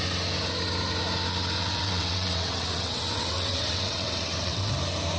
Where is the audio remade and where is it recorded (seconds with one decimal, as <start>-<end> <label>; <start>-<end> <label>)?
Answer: 0.0-1.6 recorded; 1.6-4.7 remade; 4.7-5.2 recorded